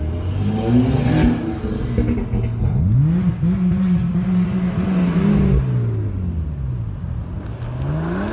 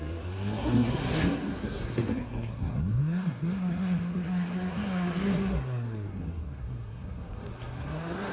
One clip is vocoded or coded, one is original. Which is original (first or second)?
first